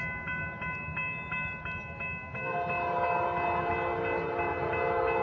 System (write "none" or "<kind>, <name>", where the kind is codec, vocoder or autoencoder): none